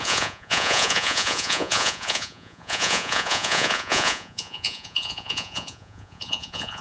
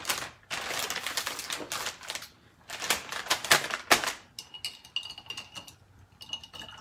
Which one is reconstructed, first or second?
first